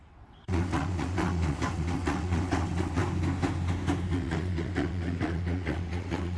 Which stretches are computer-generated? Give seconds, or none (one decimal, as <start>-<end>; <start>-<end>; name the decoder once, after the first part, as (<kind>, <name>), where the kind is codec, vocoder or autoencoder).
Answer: 0.0-3.0 (vocoder, WaveNeXt); 4.1-6.4